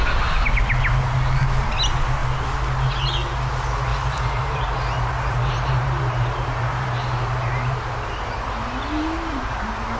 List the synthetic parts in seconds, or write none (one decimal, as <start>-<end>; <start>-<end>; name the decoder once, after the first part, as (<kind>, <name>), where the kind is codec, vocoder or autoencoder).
3.9-8.5 (vocoder, BigVGAN v2)